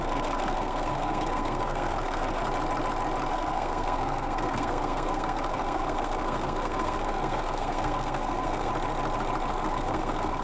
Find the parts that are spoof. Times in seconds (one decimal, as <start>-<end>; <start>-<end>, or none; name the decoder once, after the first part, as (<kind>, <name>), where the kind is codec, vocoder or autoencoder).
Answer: 0.0-2.4 (codec, SNAC); 3.3-8.7; 9.5-10.4